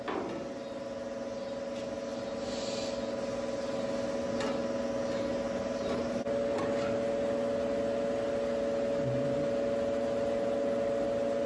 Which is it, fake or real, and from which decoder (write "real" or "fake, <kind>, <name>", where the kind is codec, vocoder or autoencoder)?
real